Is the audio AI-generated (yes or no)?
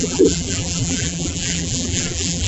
yes